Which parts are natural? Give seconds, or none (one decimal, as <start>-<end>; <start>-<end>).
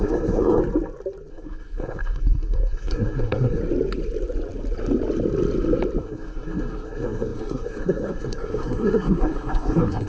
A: 0.6-1.3; 3.6-6.0